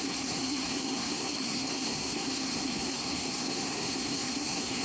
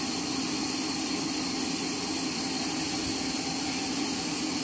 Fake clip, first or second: first